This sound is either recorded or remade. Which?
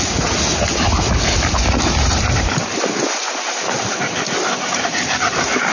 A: recorded